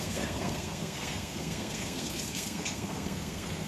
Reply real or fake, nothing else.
fake